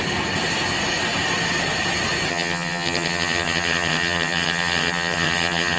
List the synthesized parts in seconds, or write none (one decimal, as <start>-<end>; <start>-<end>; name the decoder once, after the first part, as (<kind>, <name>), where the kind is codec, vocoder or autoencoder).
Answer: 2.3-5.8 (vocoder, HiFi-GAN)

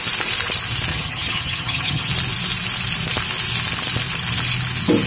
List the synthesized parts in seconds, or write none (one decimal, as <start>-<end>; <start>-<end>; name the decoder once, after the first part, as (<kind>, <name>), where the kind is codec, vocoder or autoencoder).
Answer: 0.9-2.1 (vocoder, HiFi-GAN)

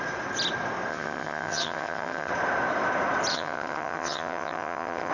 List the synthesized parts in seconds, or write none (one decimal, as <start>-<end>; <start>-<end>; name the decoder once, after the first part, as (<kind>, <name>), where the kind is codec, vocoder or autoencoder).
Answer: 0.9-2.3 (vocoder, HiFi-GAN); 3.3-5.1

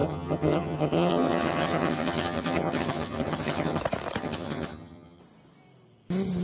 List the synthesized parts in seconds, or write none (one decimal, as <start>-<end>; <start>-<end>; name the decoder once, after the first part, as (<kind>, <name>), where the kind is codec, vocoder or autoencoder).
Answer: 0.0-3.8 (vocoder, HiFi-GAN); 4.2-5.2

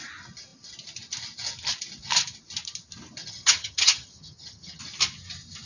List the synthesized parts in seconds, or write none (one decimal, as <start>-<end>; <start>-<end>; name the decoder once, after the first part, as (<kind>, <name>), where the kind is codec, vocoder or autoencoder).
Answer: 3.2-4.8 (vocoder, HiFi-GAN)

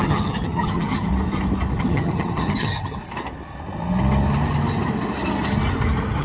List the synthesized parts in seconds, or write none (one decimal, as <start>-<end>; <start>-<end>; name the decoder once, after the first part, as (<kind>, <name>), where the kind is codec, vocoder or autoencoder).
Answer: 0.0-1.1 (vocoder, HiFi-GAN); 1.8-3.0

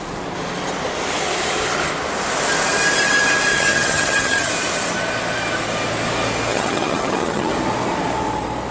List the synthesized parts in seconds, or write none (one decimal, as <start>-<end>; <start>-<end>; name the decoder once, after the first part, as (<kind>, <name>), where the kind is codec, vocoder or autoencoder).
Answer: 3.5-4.5 (vocoder, HiFi-GAN); 6.5-7.5

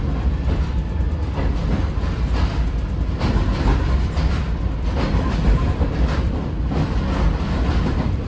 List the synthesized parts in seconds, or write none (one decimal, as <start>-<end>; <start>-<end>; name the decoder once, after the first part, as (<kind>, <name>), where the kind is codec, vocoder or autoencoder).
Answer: none